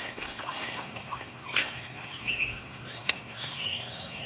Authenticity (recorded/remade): remade